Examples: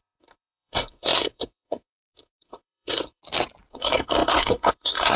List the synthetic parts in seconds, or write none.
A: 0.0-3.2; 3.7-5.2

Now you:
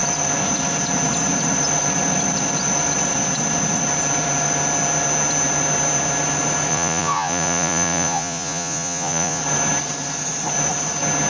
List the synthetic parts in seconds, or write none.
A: 6.7-9.4

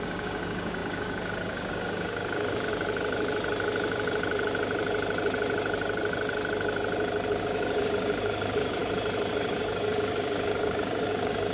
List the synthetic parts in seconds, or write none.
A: 0.0-2.7; 7.4-8.8; 9.3-11.5

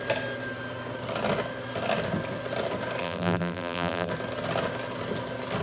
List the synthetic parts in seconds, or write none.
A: 3.0-4.1

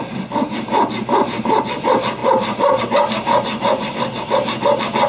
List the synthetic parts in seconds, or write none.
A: none

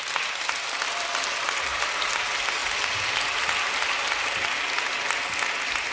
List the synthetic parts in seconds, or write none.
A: none

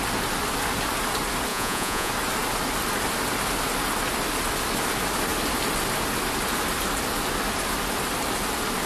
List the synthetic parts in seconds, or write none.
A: 1.5-2.1

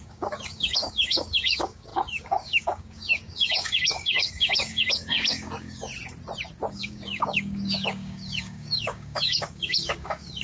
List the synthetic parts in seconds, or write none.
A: 0.0-5.9; 6.7-10.4